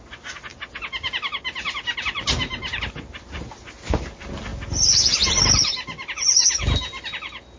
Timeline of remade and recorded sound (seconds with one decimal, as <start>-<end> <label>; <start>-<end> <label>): 0.0-7.6 recorded